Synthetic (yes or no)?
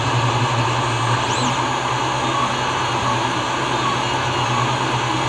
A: no